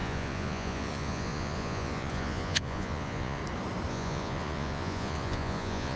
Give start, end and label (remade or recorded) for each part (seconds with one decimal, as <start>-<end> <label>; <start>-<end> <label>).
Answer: 0.0-3.4 remade; 3.4-3.9 recorded; 3.9-6.0 remade